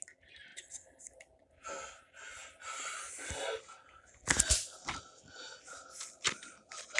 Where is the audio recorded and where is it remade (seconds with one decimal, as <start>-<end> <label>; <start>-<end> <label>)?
0.0-7.0 recorded